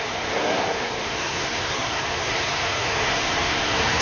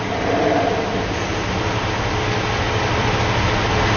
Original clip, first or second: second